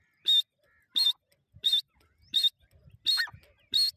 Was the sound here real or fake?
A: real